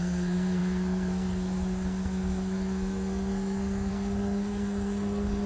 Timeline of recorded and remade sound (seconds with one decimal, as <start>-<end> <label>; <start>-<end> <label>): 0.0-5.5 remade